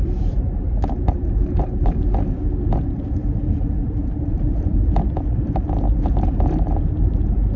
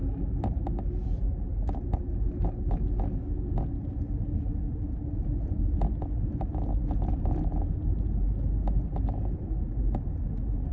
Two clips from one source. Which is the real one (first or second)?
second